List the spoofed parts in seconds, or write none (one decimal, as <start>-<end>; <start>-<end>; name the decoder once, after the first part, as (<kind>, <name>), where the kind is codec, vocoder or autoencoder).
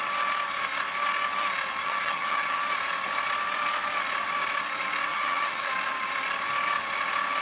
1.8-2.6 (vocoder, HiFi-GAN); 5.1-5.7